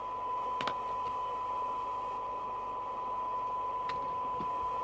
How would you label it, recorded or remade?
recorded